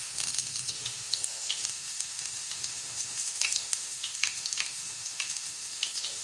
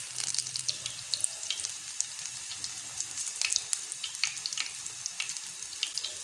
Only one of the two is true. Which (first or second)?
second